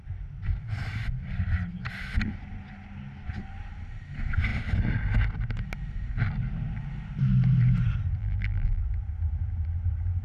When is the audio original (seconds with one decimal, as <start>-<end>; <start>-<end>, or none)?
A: 0.0-8.2; 8.8-10.2